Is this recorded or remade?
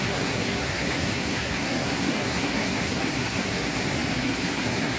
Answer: remade